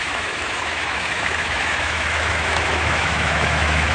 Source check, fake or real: fake